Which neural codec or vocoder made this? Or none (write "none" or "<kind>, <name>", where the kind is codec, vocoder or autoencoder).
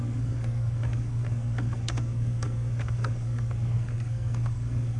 codec, SNAC